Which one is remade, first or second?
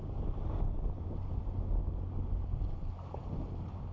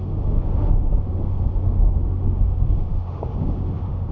second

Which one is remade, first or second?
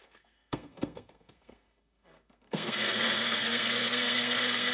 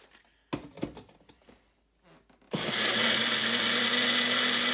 first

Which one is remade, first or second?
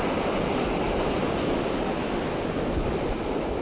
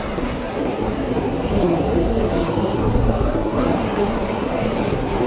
second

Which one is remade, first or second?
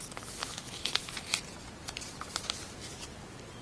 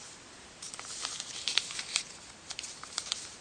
second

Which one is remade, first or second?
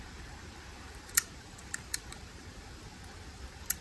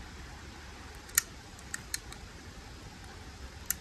first